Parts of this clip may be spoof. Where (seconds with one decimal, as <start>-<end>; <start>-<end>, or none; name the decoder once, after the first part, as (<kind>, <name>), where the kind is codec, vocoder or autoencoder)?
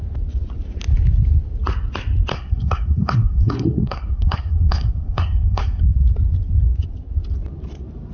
2.3-5.8 (codec, SNAC)